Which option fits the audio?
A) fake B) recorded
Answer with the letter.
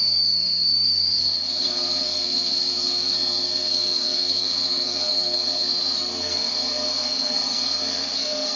A